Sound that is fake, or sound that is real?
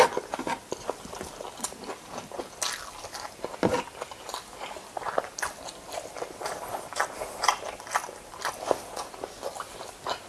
real